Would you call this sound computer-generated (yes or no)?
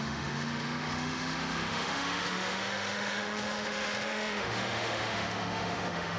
yes